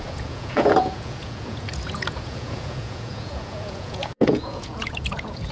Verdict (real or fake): fake